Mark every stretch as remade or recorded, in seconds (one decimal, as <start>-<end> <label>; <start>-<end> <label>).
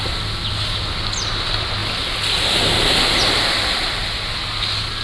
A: 0.0-5.0 recorded